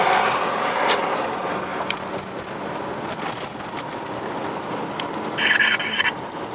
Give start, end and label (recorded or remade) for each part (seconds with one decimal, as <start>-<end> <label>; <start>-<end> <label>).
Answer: 0.0-6.5 recorded

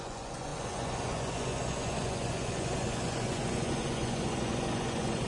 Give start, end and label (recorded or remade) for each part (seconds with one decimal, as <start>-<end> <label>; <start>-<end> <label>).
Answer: 0.0-5.3 remade